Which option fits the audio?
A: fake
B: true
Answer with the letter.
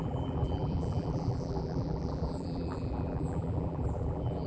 A